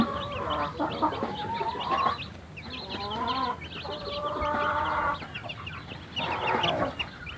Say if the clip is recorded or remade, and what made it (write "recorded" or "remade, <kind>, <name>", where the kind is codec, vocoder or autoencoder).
recorded